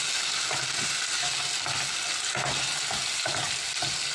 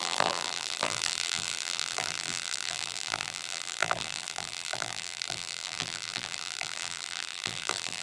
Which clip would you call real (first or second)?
first